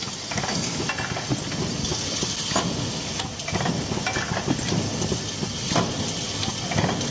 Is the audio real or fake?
real